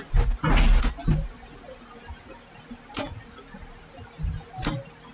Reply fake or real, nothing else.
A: real